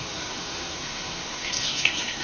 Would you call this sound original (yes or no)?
no